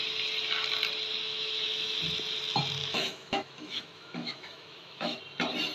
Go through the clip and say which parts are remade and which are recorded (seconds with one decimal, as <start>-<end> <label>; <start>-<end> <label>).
0.0-1.2 recorded; 1.2-2.0 remade; 2.0-2.8 recorded; 2.8-5.2 remade; 5.2-5.7 recorded